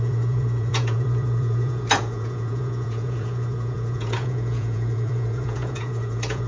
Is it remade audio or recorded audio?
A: remade